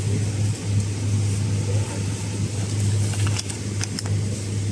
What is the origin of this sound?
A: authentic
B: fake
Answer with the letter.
A